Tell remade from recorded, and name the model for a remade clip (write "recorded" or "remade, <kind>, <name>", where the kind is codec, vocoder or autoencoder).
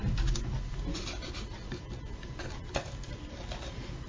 recorded